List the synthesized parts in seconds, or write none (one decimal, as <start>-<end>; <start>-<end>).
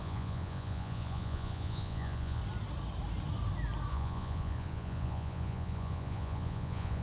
0.0-2.4; 3.9-7.0